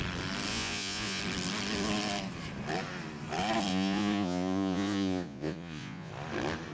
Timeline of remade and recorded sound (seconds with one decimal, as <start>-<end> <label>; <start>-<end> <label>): 0.0-0.5 recorded; 0.5-1.2 remade; 1.2-3.7 recorded; 3.7-6.1 remade; 6.1-6.7 recorded